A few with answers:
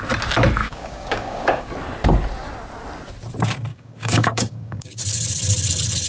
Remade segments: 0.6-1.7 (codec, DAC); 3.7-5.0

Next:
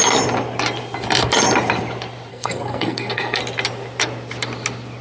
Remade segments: 2.3-3.4 (codec, SNAC)

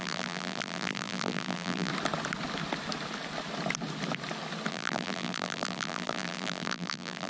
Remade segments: 0.0-1.9 (vocoder, BigVGAN v2); 4.7-7.3

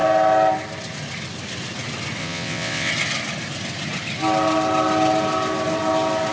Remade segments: 2.2-2.9 (vocoder, WaveNeXt)

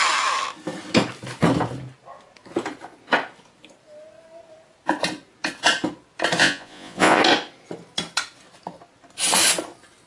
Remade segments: 6.4-7.2 (vocoder, Vocos)

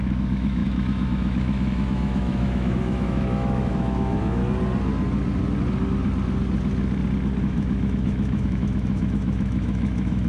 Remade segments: 0.0-4.4 (autoencoder, DAC-VAE); 7.4-10.3

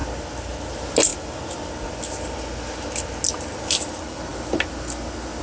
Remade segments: none

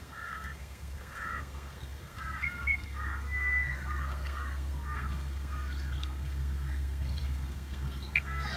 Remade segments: 0.0-8.6 (codec, SNAC)